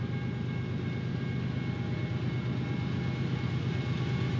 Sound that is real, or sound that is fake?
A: real